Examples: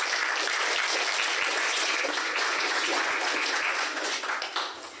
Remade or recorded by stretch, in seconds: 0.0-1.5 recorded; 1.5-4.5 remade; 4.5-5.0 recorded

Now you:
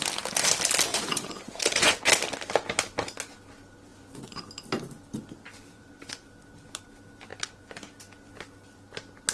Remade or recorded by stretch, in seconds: 0.0-0.9 recorded; 0.9-2.1 remade; 2.1-3.9 recorded; 3.9-4.4 remade; 4.4-5.7 recorded; 5.7-6.3 remade; 6.3-7.3 recorded; 7.3-7.9 remade; 7.9-9.3 recorded

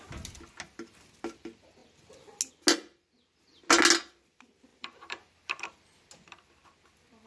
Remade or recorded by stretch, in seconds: 0.0-4.7 recorded; 4.7-5.3 remade; 5.3-7.3 recorded

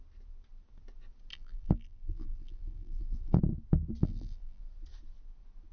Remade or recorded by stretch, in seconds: 0.0-1.3 recorded; 1.3-3.4 remade; 3.4-4.0 recorded; 4.0-4.6 remade; 4.6-5.7 recorded

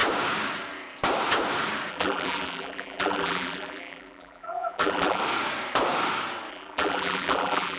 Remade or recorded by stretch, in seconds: 0.0-1.9 recorded; 1.9-5.2 remade; 5.2-6.5 recorded; 6.5-7.8 remade